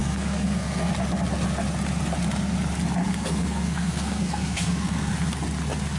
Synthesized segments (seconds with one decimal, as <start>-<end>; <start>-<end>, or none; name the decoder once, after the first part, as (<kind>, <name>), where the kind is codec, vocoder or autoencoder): 0.0-0.9 (codec, SNAC); 3.0-5.1